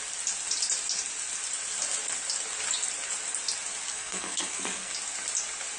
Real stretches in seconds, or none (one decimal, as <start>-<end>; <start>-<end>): 0.0-3.9; 4.9-5.8